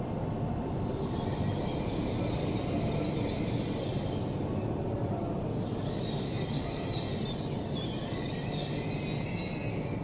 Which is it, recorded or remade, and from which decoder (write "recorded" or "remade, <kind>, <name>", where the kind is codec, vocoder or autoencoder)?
recorded